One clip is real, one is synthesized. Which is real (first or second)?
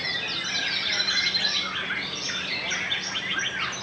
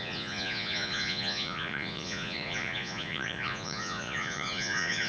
first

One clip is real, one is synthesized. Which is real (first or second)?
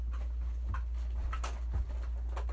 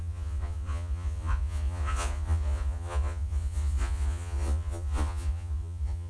first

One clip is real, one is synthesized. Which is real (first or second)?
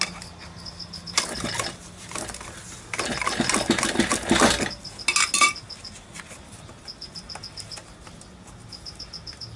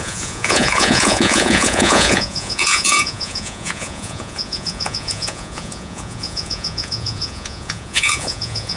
first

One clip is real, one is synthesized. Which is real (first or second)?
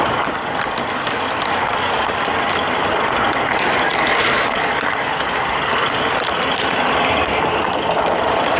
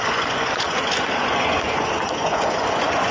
first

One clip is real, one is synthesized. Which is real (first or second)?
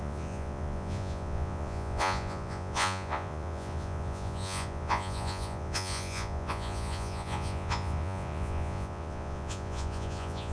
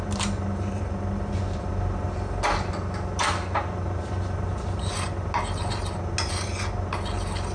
second